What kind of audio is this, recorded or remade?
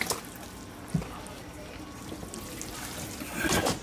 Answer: recorded